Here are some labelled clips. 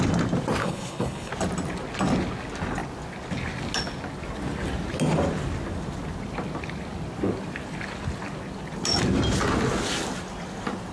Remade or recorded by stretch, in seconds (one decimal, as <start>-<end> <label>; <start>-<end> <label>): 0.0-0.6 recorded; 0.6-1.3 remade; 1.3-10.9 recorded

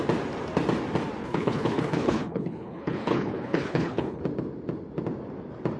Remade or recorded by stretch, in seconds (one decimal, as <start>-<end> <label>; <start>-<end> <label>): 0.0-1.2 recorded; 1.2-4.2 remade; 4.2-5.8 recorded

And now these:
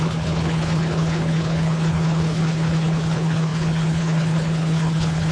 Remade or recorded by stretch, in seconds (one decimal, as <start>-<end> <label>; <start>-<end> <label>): 0.0-5.3 remade